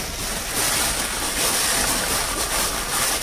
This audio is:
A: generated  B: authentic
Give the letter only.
B